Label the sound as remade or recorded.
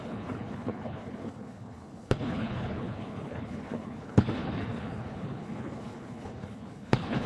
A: remade